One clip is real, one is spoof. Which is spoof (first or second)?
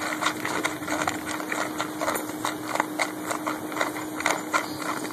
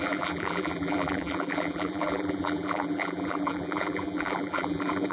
second